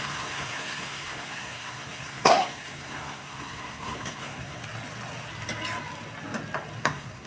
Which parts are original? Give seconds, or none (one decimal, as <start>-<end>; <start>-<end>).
4.6-6.8